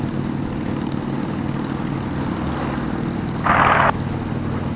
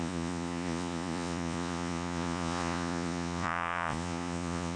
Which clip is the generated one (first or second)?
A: second